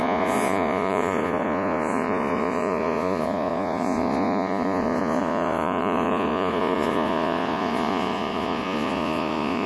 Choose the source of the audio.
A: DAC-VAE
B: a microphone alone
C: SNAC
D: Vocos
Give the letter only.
D